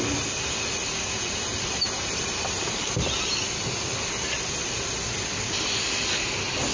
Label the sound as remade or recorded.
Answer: recorded